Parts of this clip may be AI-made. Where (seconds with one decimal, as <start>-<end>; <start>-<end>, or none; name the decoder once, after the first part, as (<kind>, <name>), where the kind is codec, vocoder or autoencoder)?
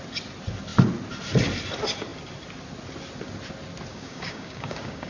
3.9-5.1 (codec, DAC)